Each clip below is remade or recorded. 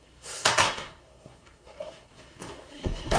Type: remade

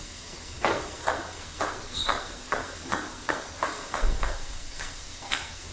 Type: remade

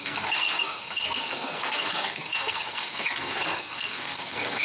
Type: remade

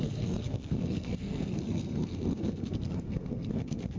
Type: remade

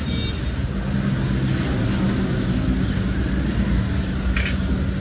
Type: recorded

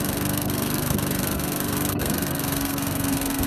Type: remade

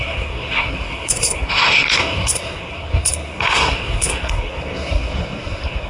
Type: remade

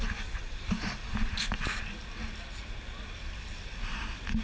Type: recorded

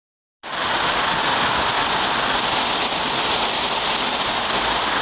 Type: recorded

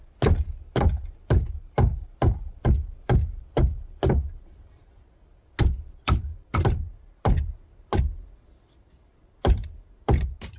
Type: recorded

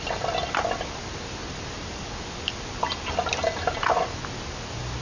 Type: recorded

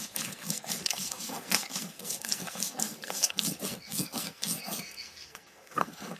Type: remade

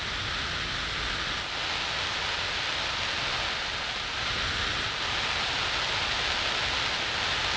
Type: recorded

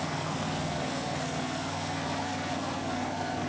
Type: remade